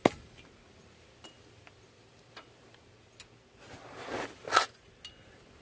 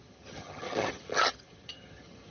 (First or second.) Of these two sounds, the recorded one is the first